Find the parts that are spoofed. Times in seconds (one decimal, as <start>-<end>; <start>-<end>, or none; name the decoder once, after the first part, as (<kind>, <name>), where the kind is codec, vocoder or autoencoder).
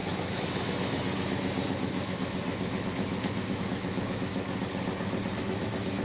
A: 0.0-4.3 (autoencoder, DAC-VAE); 5.4-6.0